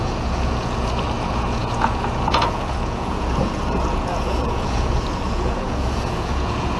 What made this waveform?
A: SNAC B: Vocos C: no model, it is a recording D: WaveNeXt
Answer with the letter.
B